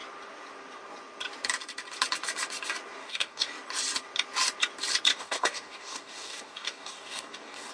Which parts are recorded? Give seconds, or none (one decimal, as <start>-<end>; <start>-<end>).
0.0-3.0; 3.5-5.1